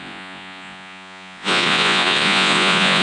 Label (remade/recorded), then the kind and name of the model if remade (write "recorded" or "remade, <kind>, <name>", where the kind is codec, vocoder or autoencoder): remade, vocoder, Vocos